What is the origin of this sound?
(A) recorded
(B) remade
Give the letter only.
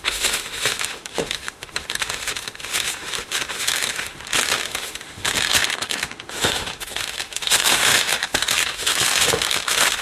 B